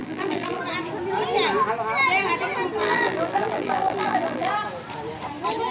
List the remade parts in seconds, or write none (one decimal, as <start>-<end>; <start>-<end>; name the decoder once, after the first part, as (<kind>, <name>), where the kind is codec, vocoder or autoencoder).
0.0-0.6 (vocoder, BigVGAN v2); 2.8-4.5